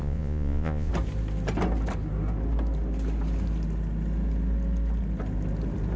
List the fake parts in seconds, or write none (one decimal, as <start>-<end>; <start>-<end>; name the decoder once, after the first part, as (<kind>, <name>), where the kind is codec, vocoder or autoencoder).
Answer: 0.0-0.9 (vocoder, Vocos)